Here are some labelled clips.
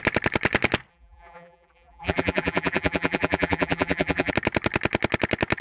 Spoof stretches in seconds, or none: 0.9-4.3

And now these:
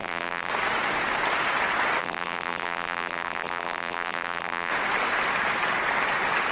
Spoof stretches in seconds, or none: 0.0-0.5; 2.0-4.7

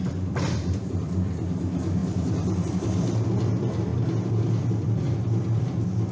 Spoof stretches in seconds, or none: 0.0-6.1

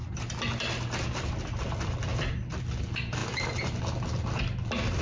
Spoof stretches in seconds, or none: none

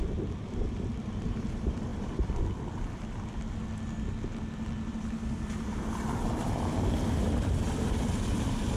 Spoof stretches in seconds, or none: 0.0-1.9; 4.9-8.8

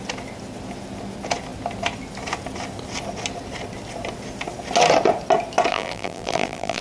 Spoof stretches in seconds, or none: 5.7-6.8

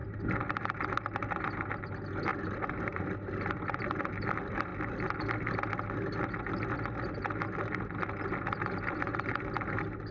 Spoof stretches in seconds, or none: none

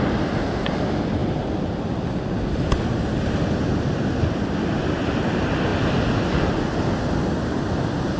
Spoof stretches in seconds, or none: none